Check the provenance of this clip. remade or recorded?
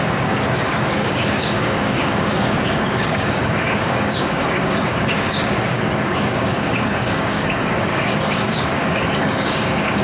remade